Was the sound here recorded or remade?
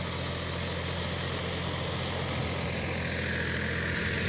recorded